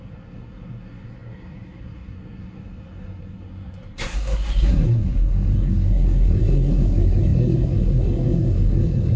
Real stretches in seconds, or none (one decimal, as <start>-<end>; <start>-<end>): none